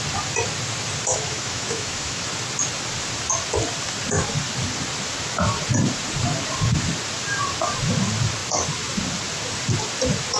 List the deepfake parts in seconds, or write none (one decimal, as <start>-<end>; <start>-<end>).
1.1-2.2